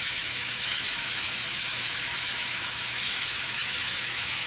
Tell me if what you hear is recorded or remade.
remade